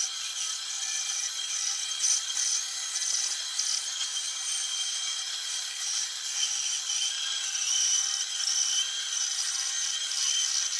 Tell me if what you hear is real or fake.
real